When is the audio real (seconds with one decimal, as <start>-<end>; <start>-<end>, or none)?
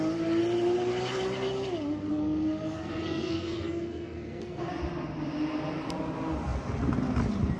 0.0-2.1; 4.7-7.6